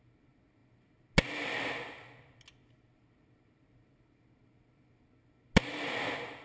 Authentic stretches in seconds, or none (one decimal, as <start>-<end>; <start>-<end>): 0.0-6.4